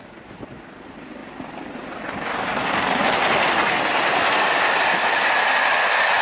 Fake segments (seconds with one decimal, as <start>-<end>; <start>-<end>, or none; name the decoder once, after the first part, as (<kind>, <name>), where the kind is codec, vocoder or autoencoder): none